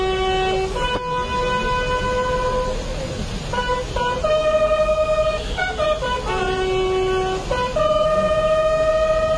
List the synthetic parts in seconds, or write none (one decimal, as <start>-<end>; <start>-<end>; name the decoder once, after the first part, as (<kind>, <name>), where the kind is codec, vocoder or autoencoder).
4.4-5.6 (codec, DAC); 7.9-8.9